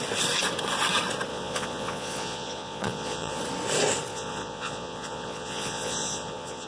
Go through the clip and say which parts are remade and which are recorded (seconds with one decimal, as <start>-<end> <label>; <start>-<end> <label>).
0.0-1.3 recorded; 1.3-3.4 remade; 3.4-4.1 recorded; 4.1-6.7 remade